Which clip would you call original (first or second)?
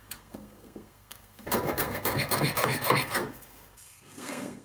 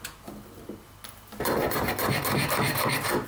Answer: second